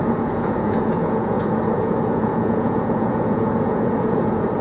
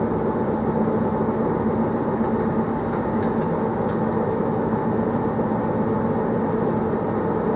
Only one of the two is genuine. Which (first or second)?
second